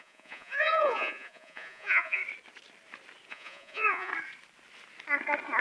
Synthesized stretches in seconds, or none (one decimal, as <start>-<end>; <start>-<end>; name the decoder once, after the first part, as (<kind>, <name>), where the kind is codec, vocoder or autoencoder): 0.0-2.2 (vocoder, Vocos); 3.3-4.1